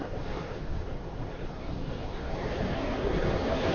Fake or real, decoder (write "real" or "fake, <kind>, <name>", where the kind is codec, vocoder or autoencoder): fake, codec, SNAC